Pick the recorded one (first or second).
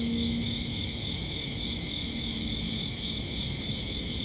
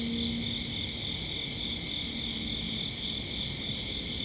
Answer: second